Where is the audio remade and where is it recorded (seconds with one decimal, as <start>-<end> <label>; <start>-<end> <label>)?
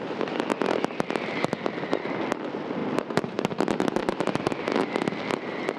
0.0-5.8 recorded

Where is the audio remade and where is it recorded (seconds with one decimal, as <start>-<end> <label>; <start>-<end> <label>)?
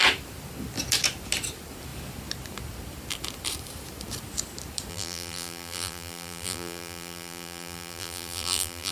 0.0-4.9 recorded; 4.9-8.9 remade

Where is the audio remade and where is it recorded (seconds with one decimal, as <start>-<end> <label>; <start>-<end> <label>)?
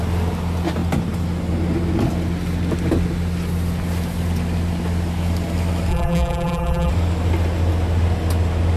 0.0-5.9 recorded; 5.9-6.9 remade; 6.9-8.8 recorded